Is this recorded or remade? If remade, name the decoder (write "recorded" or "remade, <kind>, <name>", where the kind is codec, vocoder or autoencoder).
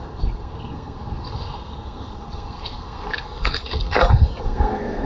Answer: remade, codec, SNAC